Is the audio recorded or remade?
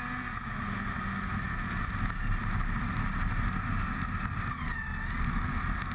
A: recorded